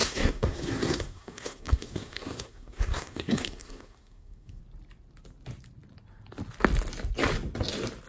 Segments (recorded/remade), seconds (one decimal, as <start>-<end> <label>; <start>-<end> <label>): 0.0-4.6 remade; 4.6-8.1 recorded